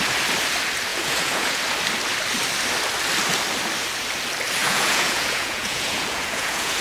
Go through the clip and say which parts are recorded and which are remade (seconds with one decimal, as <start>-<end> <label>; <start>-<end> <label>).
0.0-0.9 recorded; 0.9-1.6 remade; 1.6-4.6 recorded; 4.6-6.8 remade